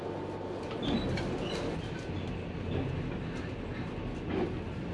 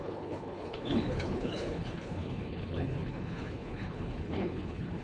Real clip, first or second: first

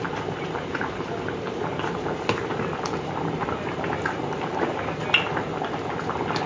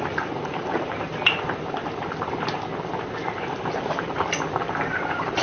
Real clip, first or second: first